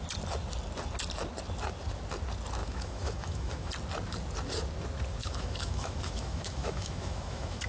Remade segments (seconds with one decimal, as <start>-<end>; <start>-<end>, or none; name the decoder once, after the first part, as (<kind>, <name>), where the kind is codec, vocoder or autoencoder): 2.6-3.7 (autoencoder, DAC-VAE); 5.2-7.7